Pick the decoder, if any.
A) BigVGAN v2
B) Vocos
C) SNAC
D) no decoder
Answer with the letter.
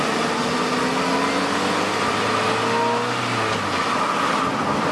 D